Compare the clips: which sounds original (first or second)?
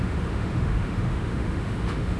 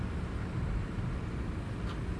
second